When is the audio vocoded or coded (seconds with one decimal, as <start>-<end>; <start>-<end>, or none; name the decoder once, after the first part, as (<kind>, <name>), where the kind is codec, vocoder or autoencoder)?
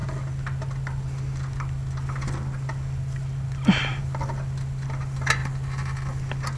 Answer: none